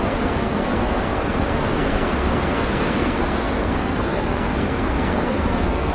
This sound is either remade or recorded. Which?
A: remade